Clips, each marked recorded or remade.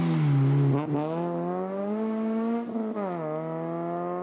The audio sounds recorded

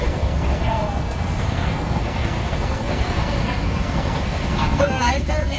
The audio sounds remade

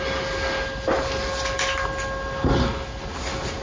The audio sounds recorded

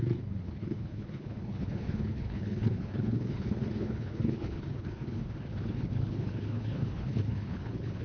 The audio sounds remade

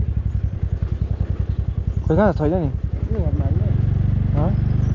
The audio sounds recorded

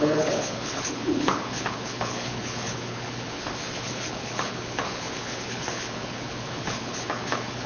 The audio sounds remade